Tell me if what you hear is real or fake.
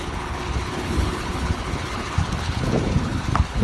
fake